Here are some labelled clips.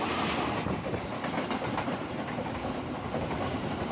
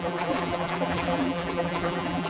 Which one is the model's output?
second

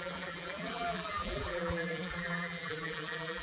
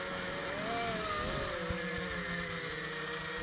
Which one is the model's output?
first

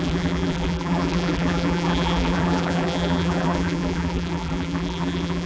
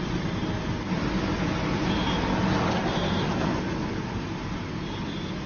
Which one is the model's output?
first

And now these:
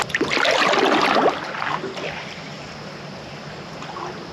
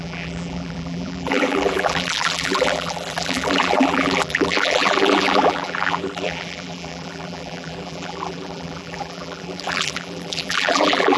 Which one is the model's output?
second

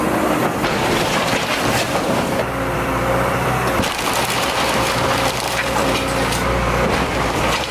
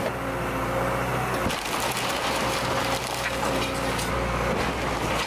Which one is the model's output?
first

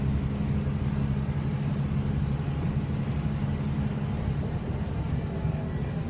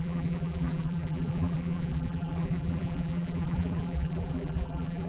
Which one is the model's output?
second